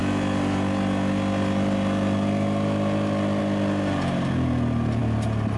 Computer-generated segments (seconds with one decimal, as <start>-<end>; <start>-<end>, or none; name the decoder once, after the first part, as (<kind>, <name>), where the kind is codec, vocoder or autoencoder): none